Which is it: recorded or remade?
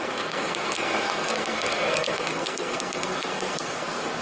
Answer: remade